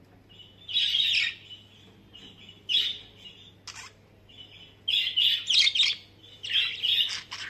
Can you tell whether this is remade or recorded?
recorded